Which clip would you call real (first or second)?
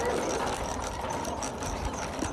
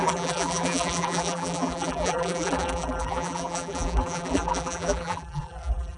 first